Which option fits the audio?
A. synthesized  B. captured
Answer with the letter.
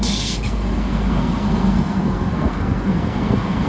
A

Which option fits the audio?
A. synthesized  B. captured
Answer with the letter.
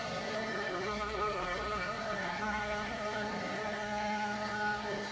A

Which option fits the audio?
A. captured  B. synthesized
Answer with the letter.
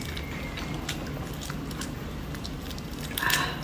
A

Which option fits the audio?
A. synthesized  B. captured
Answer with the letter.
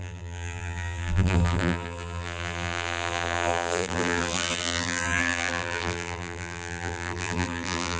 A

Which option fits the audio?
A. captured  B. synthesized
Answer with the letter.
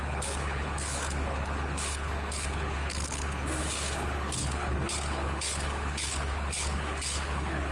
B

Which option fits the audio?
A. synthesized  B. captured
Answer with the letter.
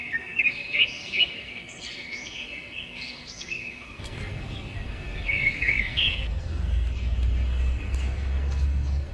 A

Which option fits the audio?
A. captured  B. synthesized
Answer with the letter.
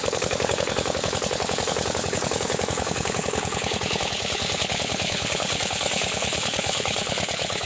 B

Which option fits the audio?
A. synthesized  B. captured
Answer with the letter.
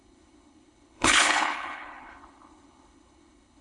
A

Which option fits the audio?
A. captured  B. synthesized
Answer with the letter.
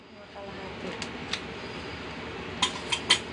A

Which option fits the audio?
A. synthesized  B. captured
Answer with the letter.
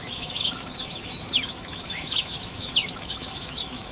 A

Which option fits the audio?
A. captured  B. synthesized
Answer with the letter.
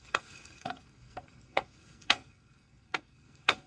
B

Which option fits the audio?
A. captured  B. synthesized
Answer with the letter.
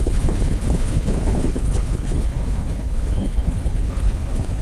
B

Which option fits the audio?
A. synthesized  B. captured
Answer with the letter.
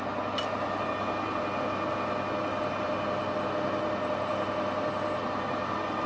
B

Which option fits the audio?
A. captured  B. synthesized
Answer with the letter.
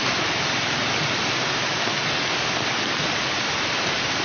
A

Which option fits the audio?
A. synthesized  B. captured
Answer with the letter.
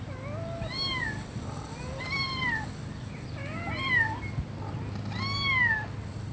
B